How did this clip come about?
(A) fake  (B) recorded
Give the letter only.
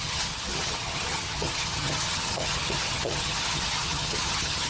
A